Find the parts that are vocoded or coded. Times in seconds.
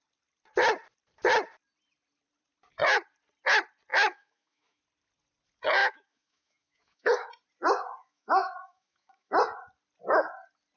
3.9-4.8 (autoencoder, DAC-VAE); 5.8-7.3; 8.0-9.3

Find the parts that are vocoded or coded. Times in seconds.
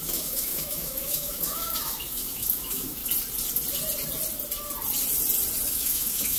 0.0-3.0 (autoencoder, DAC-VAE); 5.7-6.4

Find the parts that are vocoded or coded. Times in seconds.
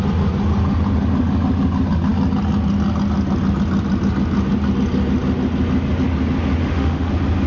6.6-7.1 (autoencoder, DAC-VAE)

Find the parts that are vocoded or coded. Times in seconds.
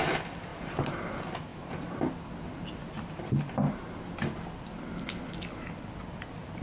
0.5-1.1 (vocoder, BigVGAN v2)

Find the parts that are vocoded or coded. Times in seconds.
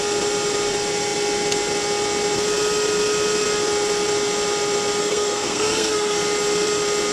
5.0-6.2 (codec, SNAC)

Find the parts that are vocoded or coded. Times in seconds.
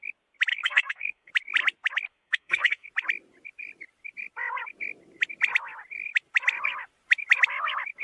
0.5-1.3 (codec, SNAC); 2.1-2.9